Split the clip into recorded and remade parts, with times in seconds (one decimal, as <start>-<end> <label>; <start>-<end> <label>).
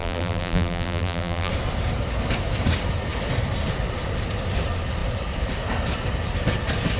0.0-1.5 remade; 1.5-7.0 recorded